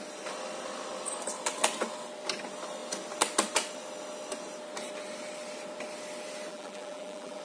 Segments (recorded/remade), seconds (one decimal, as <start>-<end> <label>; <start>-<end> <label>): 0.0-6.5 recorded; 6.5-7.4 remade